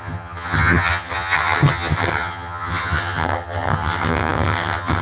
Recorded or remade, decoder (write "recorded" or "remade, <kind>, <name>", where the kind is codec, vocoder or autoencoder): remade, vocoder, HiFi-GAN